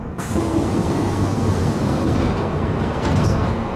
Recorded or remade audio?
remade